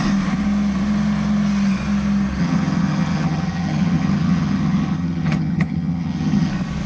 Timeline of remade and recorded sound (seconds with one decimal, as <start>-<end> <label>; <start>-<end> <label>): 0.0-2.4 recorded; 2.4-6.5 remade; 6.5-6.9 recorded